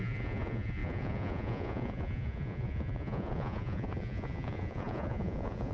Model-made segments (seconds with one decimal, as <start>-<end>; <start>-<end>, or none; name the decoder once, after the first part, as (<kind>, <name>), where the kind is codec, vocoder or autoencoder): 0.0-5.7 (vocoder, Vocos)